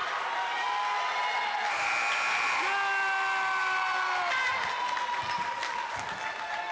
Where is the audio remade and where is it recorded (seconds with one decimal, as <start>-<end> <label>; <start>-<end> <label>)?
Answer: 0.0-6.7 recorded